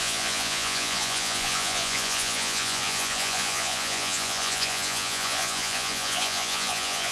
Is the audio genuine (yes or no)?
no